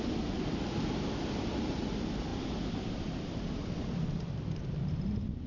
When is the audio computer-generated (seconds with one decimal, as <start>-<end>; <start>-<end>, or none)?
2.3-4.6